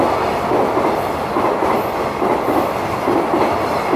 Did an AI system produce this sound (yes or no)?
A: no